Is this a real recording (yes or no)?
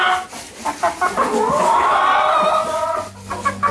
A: yes